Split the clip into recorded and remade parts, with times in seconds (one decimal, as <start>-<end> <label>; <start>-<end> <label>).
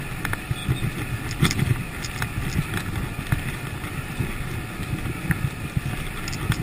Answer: 0.0-6.6 recorded